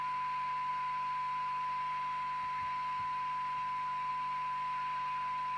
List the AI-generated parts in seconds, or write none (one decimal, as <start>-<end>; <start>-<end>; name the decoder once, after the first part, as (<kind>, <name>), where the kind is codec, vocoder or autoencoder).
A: none